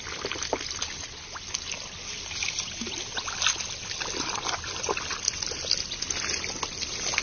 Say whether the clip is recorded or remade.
recorded